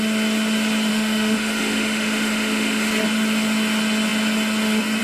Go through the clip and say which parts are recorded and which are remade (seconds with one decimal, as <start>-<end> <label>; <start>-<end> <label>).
0.0-0.9 recorded; 0.9-2.9 remade; 2.9-5.0 recorded